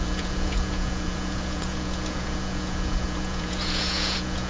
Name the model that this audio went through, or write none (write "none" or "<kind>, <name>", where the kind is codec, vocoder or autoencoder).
vocoder, Vocos